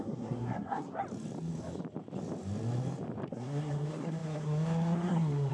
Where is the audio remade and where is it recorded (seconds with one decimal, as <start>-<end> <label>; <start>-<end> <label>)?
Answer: 0.0-1.0 remade; 1.0-3.3 recorded; 3.3-5.5 remade